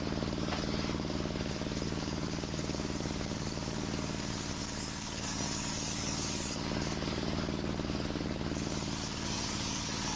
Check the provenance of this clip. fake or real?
fake